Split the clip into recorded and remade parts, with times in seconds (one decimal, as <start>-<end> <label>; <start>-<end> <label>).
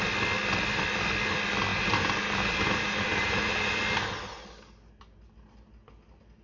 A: 0.0-1.7 recorded; 1.7-3.8 remade; 3.8-6.4 recorded